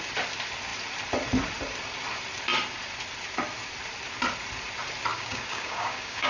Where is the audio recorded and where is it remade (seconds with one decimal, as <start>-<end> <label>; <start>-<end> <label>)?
0.0-5.1 recorded; 5.1-6.3 remade